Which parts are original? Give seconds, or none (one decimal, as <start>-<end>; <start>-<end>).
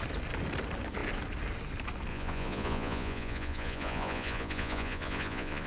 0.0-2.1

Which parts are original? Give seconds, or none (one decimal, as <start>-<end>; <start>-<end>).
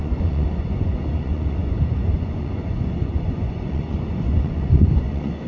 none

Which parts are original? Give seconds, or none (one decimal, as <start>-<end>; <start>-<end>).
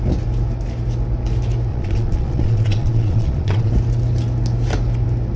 0.0-1.7; 3.7-5.4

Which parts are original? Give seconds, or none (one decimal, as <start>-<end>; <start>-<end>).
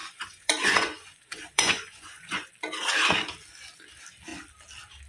2.5-5.1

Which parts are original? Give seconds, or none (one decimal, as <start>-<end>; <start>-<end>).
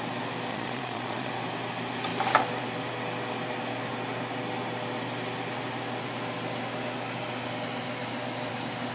0.0-0.5; 1.3-8.9